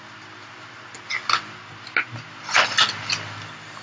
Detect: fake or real real